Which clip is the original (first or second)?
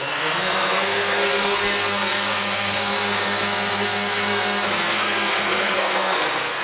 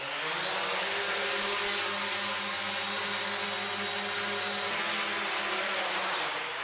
second